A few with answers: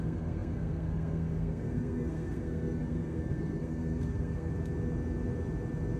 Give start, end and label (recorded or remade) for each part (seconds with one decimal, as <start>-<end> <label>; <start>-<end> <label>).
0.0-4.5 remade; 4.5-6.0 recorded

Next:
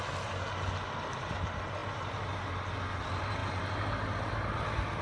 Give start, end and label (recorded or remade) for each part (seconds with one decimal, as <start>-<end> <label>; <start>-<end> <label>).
0.0-5.0 recorded

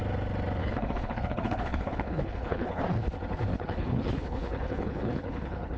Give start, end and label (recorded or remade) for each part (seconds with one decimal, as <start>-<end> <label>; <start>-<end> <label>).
0.0-0.6 recorded; 0.6-2.8 remade; 2.8-3.5 recorded; 3.5-5.8 remade

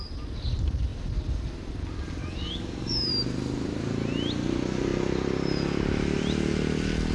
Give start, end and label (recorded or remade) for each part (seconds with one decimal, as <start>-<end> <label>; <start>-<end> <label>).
0.0-2.2 recorded; 2.2-3.1 remade; 3.1-7.1 recorded

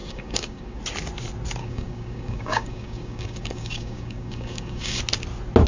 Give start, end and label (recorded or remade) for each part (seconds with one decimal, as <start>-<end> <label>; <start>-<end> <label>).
0.0-0.8 remade; 0.8-1.6 recorded; 1.6-5.0 remade; 5.0-5.7 recorded

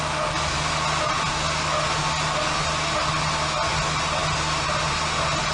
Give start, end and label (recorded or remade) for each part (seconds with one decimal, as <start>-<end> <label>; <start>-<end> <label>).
0.0-5.5 recorded

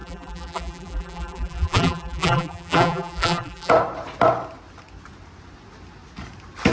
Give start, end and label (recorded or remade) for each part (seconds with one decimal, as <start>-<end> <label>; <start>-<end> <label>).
0.0-3.7 remade; 3.7-6.7 recorded